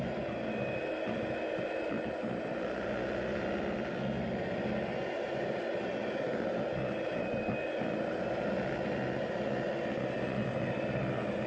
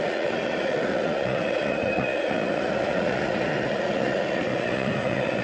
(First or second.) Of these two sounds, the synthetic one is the second